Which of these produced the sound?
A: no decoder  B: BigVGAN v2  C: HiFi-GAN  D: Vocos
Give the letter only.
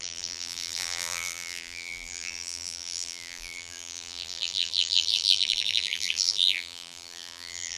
B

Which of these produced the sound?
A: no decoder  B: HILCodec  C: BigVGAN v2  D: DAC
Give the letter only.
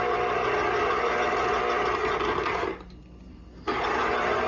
A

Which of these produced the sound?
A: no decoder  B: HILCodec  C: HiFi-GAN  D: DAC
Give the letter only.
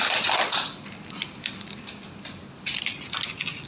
A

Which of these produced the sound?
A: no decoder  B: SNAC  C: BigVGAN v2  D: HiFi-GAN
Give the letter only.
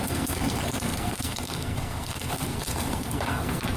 B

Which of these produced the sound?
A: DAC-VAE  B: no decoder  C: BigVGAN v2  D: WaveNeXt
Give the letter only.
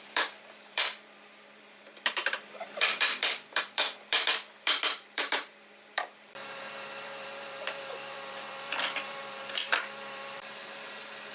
C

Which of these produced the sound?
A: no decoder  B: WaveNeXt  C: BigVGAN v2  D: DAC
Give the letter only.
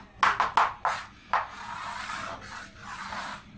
A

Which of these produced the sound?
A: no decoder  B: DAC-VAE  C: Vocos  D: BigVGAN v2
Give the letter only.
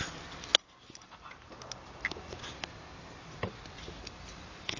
A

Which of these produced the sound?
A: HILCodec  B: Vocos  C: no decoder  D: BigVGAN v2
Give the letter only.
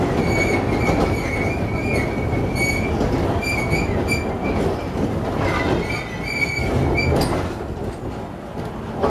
C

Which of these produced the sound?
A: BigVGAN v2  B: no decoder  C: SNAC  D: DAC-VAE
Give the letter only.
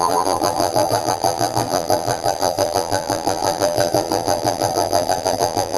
A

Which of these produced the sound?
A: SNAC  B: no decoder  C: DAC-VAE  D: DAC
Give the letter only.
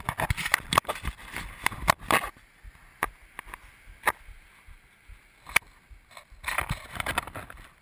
B